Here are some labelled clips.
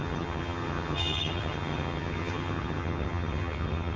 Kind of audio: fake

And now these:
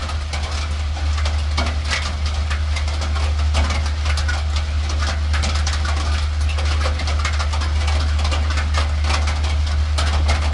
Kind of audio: real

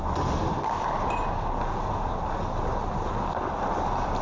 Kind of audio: real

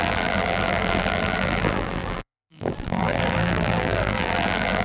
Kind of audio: fake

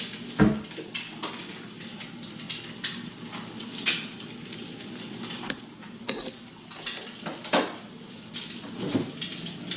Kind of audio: real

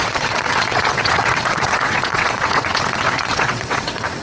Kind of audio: fake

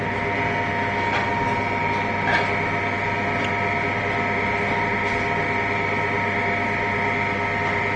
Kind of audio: real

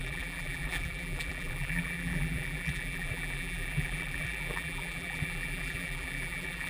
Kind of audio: fake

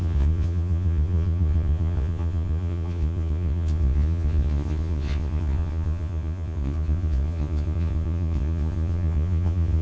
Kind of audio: fake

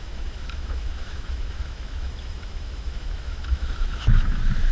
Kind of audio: fake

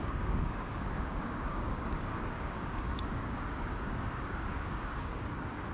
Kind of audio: fake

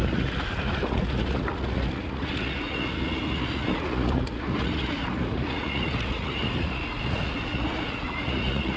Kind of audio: fake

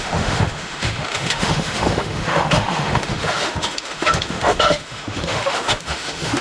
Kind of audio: fake